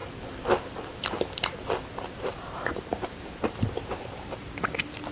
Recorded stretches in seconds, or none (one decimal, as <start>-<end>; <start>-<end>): 0.0-2.1